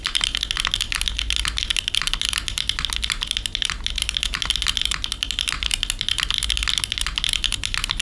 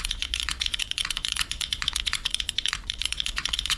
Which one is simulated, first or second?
second